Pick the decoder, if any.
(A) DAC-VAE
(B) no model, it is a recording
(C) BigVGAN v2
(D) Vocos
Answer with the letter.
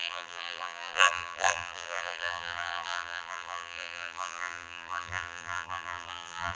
C